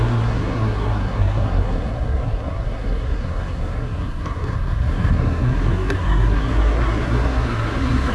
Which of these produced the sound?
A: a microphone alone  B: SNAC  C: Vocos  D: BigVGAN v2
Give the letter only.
B